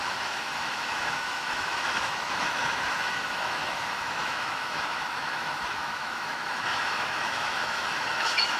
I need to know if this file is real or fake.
fake